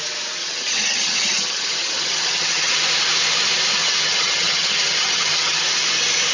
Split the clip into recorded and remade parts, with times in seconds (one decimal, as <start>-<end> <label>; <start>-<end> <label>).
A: 0.0-0.4 recorded; 0.4-2.8 remade; 2.8-3.8 recorded; 3.8-5.6 remade; 5.6-6.3 recorded